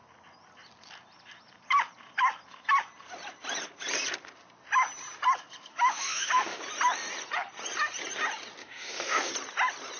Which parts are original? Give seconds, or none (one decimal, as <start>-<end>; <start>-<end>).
0.0-5.7; 6.6-8.6; 9.3-10.0